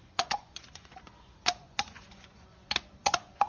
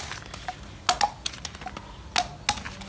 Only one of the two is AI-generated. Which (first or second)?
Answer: first